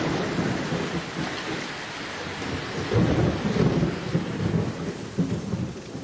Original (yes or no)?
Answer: yes